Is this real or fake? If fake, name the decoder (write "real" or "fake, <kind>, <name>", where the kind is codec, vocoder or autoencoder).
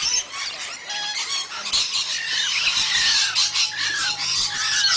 real